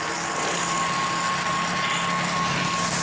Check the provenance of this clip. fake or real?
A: real